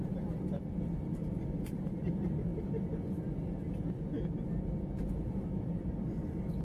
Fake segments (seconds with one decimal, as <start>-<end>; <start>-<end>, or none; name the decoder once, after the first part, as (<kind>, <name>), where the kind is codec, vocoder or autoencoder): none